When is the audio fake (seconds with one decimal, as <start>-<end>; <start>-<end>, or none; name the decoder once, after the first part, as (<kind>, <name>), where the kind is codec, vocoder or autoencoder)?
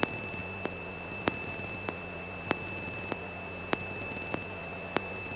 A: none